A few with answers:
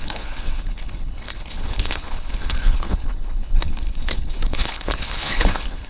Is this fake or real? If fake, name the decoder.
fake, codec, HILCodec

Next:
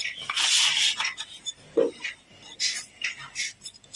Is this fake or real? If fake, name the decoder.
real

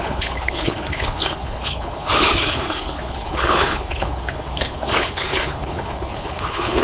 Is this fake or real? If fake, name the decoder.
fake, codec, HILCodec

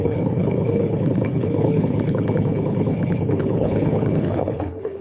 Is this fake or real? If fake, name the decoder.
fake, codec, HILCodec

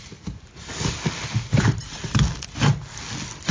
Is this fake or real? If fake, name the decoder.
real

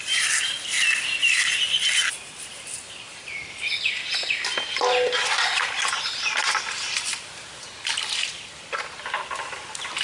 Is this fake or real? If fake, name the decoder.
real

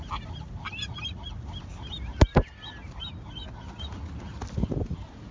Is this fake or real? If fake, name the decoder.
real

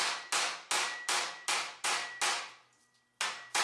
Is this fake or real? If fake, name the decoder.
real